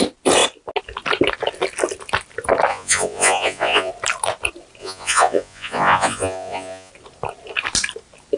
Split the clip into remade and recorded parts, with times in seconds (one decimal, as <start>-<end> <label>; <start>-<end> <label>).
0.0-2.7 recorded; 2.7-3.9 remade; 3.9-4.8 recorded; 4.8-6.9 remade; 6.9-8.4 recorded